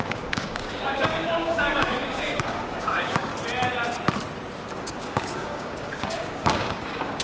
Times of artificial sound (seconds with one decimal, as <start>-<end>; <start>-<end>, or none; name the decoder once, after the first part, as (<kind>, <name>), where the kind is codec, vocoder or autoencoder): 0.0-3.3 (codec, DAC); 4.8-7.2